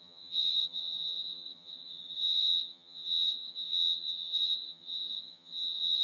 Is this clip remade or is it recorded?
remade